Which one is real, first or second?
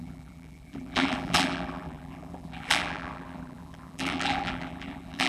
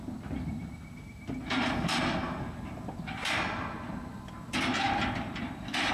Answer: second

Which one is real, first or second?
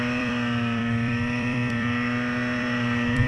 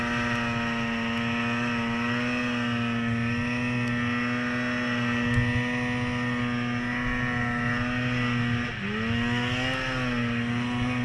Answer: second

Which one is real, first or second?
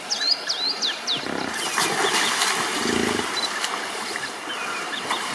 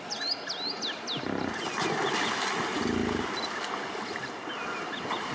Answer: second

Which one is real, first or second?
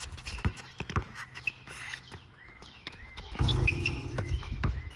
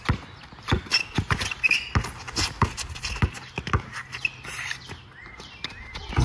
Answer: second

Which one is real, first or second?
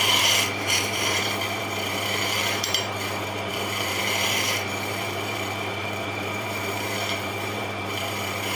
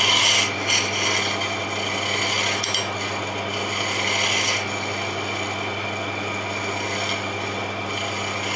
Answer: second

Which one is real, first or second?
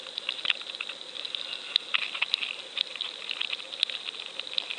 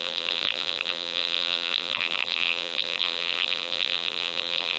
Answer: first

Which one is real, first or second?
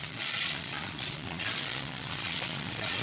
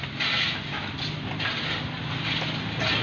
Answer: second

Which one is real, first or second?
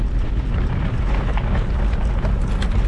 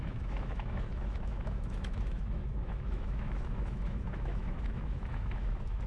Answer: first